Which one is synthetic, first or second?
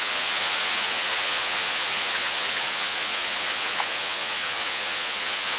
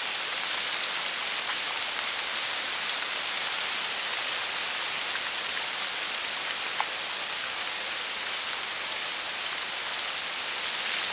first